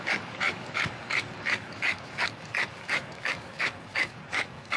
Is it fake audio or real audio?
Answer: fake